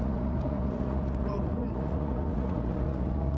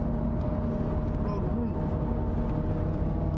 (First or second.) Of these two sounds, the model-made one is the first